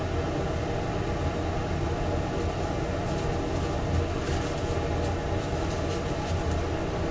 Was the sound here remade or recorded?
recorded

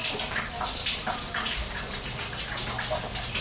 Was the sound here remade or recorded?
recorded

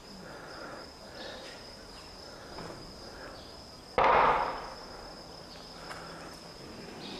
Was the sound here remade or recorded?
recorded